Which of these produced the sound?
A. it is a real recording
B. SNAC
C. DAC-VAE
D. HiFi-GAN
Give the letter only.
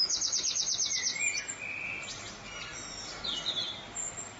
A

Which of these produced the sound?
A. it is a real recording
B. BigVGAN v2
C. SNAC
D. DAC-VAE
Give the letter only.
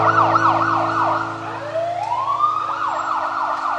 A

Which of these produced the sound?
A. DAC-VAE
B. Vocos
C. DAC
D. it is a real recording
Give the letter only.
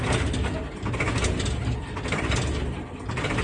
D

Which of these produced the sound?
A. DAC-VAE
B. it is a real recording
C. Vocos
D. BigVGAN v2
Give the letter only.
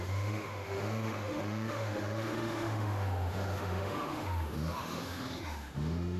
A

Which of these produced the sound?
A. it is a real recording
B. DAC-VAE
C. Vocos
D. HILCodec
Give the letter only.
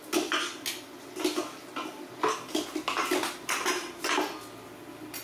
A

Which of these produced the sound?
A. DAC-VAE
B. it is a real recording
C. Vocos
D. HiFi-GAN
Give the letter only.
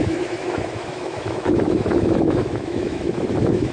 A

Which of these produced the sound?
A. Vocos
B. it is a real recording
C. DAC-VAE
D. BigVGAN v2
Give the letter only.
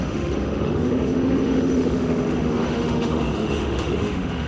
C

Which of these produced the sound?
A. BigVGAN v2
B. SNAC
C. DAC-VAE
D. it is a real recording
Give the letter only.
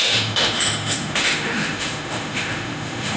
C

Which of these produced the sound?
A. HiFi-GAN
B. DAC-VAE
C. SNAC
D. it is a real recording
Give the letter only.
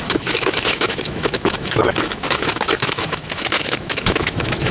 B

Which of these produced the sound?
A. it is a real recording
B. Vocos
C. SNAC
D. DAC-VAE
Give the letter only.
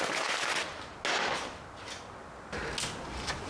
A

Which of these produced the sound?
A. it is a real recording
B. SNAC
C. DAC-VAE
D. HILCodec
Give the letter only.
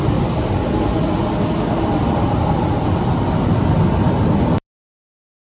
A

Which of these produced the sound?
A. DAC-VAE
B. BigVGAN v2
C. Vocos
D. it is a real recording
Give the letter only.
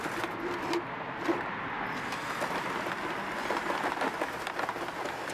D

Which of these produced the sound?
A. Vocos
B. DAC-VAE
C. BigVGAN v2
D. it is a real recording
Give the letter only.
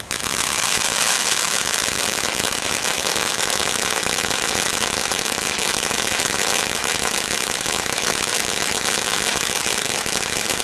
B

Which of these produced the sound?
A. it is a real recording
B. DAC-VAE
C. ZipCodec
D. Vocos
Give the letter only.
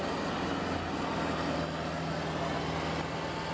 A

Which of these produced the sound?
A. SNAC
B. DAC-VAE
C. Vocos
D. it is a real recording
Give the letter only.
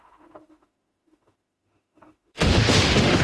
B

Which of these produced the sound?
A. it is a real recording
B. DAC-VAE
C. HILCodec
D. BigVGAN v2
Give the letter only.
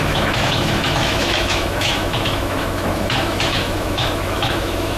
B